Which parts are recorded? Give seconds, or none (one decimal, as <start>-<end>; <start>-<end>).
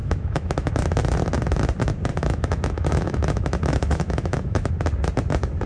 0.7-2.1; 4.7-5.7